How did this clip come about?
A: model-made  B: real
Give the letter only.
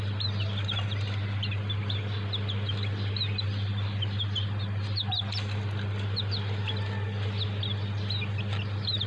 B